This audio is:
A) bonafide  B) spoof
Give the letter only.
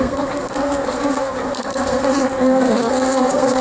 B